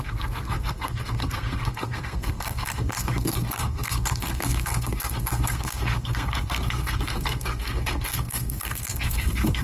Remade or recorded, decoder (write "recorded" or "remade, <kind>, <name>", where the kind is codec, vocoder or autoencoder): remade, codec, SNAC